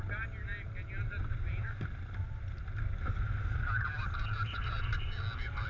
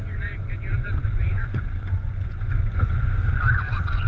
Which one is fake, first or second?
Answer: second